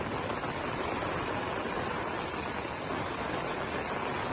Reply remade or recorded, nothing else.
recorded